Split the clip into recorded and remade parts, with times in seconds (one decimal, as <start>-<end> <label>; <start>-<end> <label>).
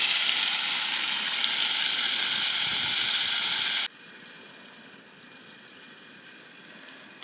0.0-7.2 recorded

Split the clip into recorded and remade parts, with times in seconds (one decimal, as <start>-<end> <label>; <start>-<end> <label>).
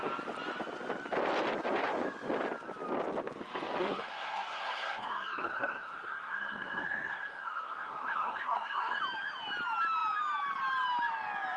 0.0-3.8 recorded; 3.8-9.0 remade; 9.0-11.6 recorded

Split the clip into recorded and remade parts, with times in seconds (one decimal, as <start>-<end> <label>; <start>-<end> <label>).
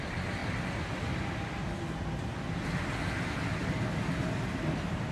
0.0-5.1 recorded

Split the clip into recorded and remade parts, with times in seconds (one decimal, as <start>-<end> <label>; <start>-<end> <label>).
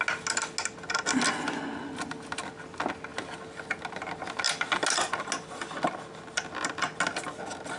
0.0-7.8 recorded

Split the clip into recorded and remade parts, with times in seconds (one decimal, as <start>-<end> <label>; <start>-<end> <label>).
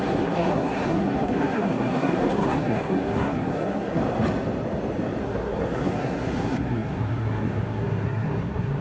0.0-4.0 remade; 4.0-5.2 recorded; 5.2-8.8 remade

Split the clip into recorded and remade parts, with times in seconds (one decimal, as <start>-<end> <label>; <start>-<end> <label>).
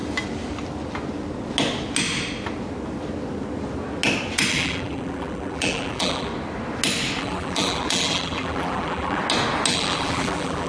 0.0-4.5 recorded; 4.5-6.3 remade; 6.3-7.2 recorded; 7.2-9.2 remade; 9.2-9.7 recorded; 9.7-10.7 remade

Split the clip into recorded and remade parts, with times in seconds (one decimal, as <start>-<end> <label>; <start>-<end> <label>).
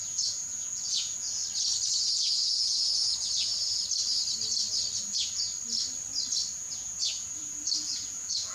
0.0-1.4 remade; 1.4-1.9 recorded; 1.9-3.5 remade; 3.5-5.0 recorded; 5.0-5.5 remade; 5.5-6.5 recorded; 6.5-8.5 remade